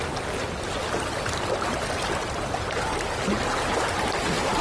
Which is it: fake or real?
real